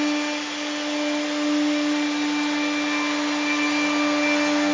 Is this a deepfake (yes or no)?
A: no